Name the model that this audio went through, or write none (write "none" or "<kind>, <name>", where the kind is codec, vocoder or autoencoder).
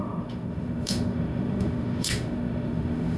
autoencoder, DAC-VAE